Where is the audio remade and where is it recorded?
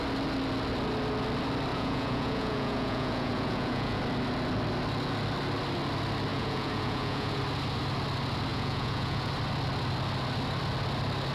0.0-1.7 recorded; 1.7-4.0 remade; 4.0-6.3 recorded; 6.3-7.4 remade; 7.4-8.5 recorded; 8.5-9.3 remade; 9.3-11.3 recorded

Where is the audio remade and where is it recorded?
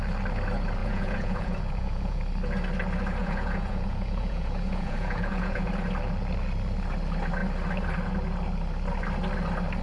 0.0-0.8 recorded; 0.8-2.2 remade; 2.2-3.2 recorded; 3.2-5.7 remade; 5.7-9.8 recorded